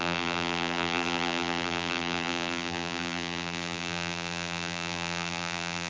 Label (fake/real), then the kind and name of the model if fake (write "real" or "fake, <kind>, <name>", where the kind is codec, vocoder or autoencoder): fake, vocoder, BigVGAN v2